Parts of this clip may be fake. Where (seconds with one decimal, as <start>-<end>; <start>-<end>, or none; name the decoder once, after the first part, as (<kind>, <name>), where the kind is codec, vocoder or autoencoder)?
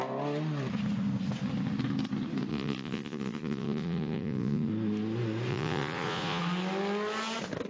2.5-4.7 (vocoder, Vocos); 5.5-6.4